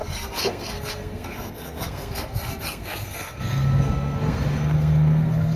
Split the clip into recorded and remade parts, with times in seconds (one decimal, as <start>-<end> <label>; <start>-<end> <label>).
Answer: 0.0-5.6 remade